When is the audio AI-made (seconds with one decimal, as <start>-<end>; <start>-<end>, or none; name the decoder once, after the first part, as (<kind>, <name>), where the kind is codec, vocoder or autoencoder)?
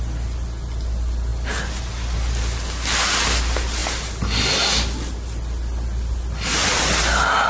none